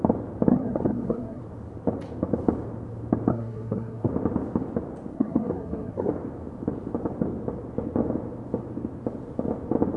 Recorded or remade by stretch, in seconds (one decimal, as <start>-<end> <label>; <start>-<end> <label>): 0.0-0.5 recorded; 0.5-1.4 remade; 1.4-3.3 recorded; 3.3-4.1 remade; 4.1-5.1 recorded; 5.1-6.1 remade; 6.1-10.0 recorded